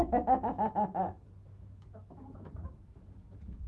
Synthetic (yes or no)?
yes